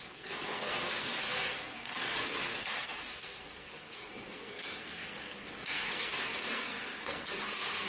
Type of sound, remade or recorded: remade